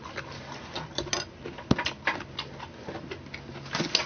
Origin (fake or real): real